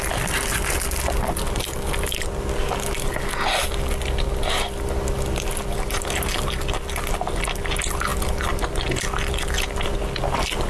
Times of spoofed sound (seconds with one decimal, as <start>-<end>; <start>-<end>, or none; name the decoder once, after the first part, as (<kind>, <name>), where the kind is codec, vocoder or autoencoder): none